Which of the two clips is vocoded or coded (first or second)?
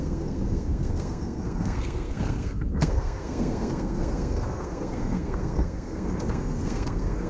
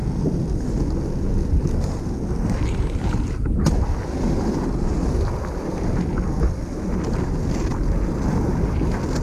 first